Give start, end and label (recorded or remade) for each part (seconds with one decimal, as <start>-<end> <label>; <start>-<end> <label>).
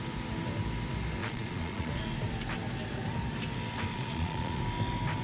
0.0-1.2 recorded; 1.2-1.9 remade; 1.9-3.9 recorded; 3.9-4.6 remade; 4.6-5.2 recorded